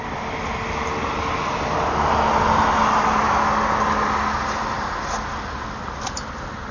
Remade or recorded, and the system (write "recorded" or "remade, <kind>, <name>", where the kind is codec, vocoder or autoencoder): recorded